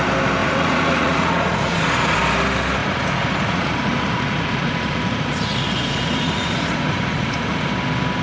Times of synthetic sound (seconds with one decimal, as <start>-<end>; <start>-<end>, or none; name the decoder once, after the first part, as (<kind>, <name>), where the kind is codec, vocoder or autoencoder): 0.4-2.2 (vocoder, Vocos); 2.8-7.7